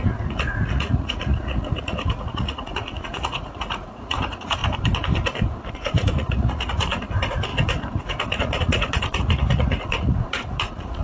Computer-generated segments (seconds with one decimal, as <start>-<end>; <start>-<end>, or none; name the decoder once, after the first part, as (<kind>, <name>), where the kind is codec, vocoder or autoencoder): 0.0-4.6 (vocoder, Vocos); 5.7-11.0